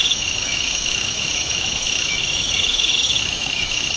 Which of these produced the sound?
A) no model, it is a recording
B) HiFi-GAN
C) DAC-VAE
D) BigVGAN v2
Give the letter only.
C